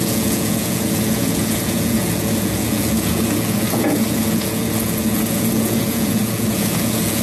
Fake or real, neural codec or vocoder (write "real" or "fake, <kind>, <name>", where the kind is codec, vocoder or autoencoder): fake, vocoder, Vocos